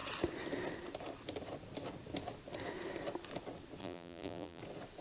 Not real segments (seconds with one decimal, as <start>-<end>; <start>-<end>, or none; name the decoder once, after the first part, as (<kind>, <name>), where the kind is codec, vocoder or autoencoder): 3.8-4.6 (vocoder, BigVGAN v2)